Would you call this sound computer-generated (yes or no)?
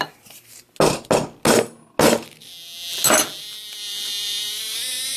no